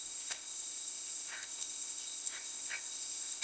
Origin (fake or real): fake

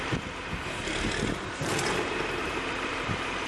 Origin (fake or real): fake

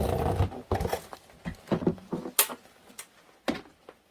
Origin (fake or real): real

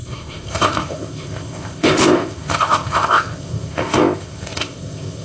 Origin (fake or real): fake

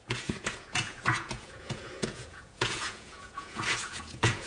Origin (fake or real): fake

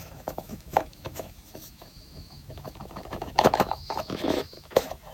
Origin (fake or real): fake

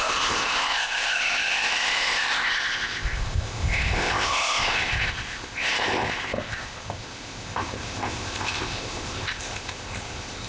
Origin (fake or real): fake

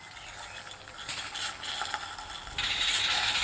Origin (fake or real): real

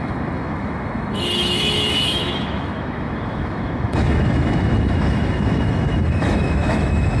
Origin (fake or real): fake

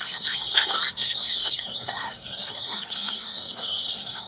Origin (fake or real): fake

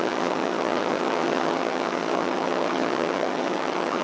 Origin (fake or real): fake